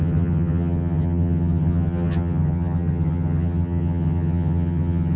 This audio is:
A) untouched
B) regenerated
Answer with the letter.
B